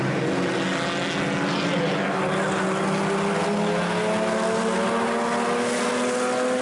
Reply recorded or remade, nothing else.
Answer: recorded